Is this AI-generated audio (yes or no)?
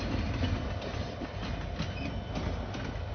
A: no